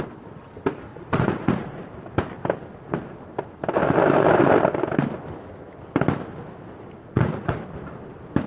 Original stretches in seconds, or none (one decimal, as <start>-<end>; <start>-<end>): 0.0-0.9; 1.9-7.0; 7.6-8.5